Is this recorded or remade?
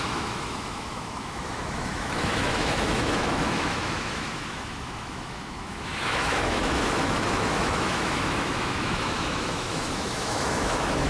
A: remade